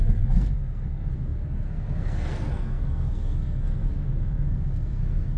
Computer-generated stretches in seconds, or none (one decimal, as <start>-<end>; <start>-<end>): 0.0-5.4